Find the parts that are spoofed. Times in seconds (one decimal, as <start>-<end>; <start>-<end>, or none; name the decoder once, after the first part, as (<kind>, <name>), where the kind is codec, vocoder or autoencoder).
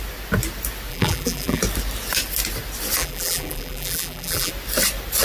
0.9-1.6 (vocoder, BigVGAN v2); 3.0-4.5